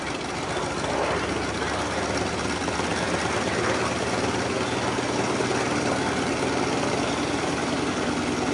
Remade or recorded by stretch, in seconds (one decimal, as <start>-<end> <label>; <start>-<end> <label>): 0.0-8.5 recorded